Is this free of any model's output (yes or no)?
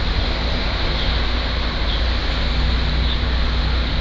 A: yes